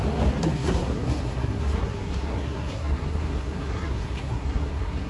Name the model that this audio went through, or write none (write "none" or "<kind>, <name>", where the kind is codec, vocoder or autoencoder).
codec, SNAC